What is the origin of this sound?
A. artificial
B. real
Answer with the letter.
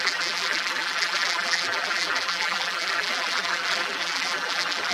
A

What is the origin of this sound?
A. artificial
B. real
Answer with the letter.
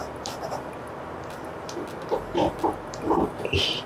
A